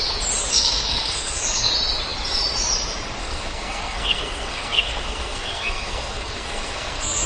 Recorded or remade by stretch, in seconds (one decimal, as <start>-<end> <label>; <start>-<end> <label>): 0.0-0.5 recorded; 0.5-1.7 remade; 1.7-3.2 recorded; 3.2-7.3 remade